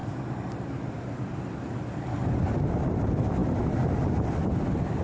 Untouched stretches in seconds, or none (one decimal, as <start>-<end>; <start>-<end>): 0.0-5.0